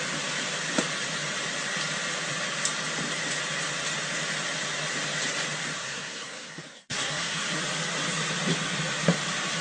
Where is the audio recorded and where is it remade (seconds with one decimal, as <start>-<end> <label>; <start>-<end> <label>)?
0.0-5.8 recorded; 5.8-7.6 remade; 7.6-9.6 recorded